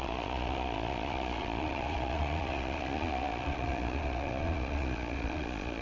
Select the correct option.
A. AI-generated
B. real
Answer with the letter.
A